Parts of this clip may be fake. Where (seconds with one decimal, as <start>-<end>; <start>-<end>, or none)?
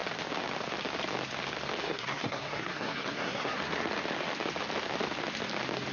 1.8-3.6